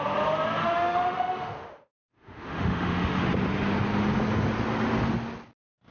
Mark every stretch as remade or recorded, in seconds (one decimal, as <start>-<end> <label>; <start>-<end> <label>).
0.0-0.6 recorded; 0.6-3.2 remade; 3.2-5.9 recorded